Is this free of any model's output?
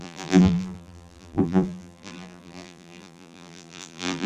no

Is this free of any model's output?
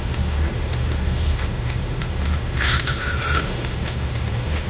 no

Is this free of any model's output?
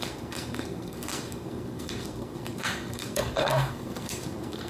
no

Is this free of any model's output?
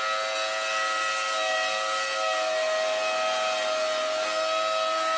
yes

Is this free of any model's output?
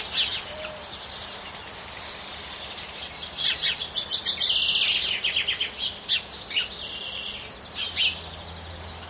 yes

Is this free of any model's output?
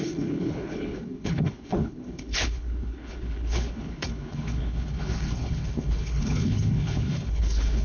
no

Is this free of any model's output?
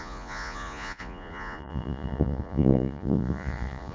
no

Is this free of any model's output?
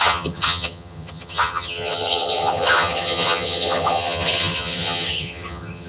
no